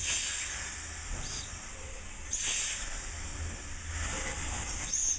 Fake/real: real